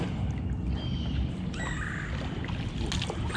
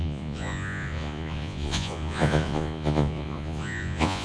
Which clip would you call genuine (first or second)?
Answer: first